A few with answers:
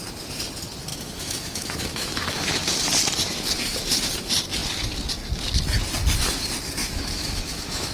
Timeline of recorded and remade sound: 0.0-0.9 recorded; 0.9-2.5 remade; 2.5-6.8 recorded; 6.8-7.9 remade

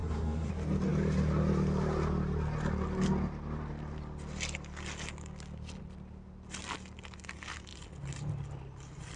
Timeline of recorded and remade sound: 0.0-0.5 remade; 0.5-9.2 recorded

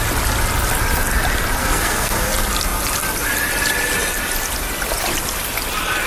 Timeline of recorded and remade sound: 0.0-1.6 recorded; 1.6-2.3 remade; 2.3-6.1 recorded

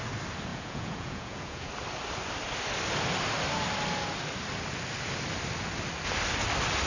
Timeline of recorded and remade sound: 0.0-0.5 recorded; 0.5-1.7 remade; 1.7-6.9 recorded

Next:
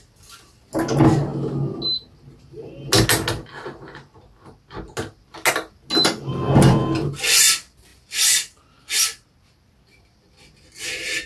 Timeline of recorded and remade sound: 0.0-11.3 recorded